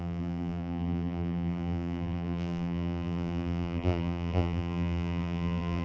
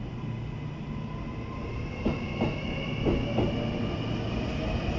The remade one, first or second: first